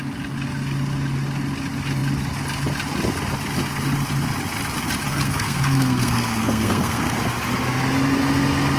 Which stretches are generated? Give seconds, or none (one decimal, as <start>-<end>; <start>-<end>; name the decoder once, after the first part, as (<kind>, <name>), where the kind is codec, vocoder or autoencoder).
5.1-7.2 (codec, SNAC)